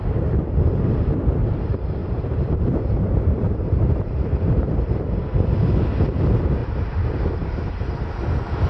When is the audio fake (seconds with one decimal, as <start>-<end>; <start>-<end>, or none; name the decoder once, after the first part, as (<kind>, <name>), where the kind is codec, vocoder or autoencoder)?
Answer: 2.0-4.2 (vocoder, BigVGAN v2); 6.6-8.1